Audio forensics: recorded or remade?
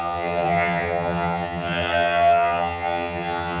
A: remade